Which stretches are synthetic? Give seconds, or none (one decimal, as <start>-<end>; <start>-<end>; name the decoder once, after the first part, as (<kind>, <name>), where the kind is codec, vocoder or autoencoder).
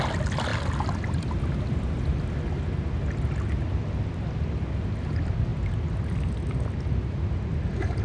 none